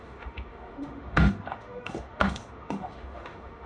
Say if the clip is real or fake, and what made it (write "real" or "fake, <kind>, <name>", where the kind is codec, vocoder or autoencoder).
fake, autoencoder, DAC-VAE